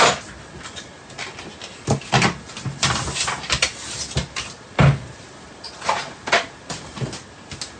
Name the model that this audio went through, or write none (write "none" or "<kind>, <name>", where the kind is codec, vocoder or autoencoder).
none